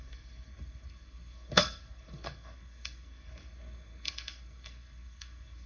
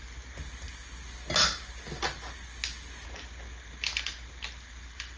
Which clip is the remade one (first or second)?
first